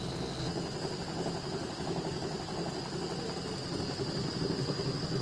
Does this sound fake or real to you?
real